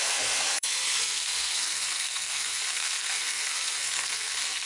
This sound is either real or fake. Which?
fake